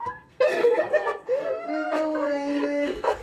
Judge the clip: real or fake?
fake